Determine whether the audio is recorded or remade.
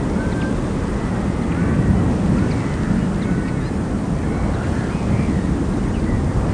recorded